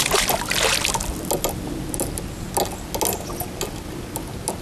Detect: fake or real real